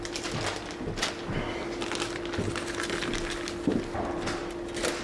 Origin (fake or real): real